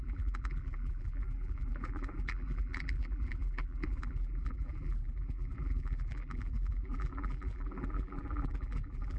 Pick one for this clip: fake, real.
fake